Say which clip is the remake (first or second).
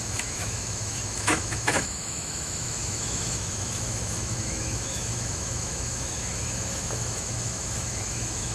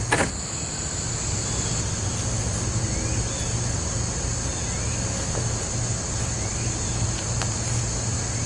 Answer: first